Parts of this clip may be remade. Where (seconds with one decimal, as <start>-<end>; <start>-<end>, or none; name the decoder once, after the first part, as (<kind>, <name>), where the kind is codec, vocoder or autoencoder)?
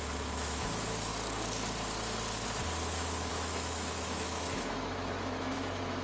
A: 0.0-1.1 (autoencoder, DAC-VAE); 3.3-6.0